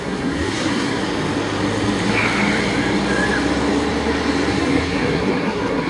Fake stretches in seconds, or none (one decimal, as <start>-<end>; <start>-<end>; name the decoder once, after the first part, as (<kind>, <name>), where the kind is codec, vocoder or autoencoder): 0.0-1.0 (codec, SNAC); 4.5-5.9